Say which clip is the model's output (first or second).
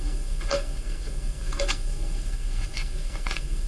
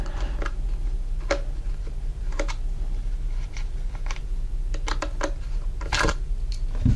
first